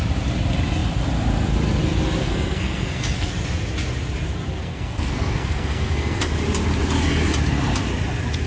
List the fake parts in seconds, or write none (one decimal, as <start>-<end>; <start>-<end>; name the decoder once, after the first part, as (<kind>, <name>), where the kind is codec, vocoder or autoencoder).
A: 2.2-3.3 (codec, SNAC); 4.6-6.3